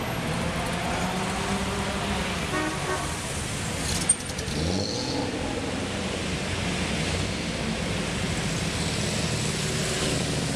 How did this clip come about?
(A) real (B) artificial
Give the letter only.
A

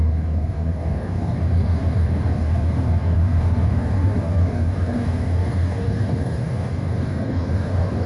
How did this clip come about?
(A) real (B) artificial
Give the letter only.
B